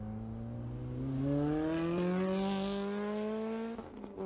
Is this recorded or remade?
recorded